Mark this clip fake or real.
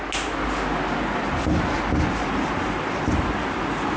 real